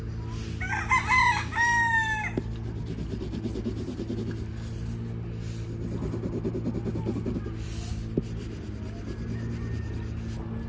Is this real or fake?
real